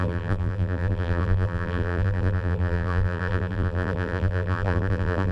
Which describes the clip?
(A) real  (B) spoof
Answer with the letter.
B